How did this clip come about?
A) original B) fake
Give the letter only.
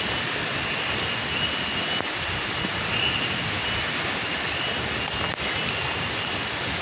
A